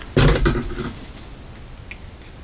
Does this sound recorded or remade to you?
recorded